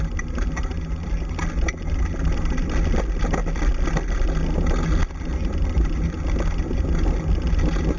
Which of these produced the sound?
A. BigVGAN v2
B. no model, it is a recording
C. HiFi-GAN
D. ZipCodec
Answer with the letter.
B